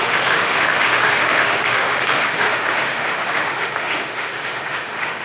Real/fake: fake